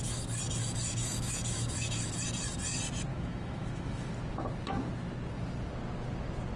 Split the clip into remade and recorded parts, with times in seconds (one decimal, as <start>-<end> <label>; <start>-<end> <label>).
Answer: 0.0-0.6 recorded; 0.6-2.1 remade; 2.1-3.1 recorded; 3.1-4.1 remade; 4.1-6.6 recorded